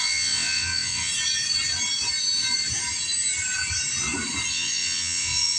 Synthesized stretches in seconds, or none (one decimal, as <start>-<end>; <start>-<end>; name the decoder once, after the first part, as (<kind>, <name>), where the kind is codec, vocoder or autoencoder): 0.0-1.1 (vocoder, WaveNeXt); 4.5-5.6